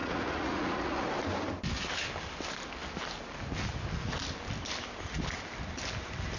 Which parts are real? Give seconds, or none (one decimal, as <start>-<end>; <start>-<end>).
1.1-6.4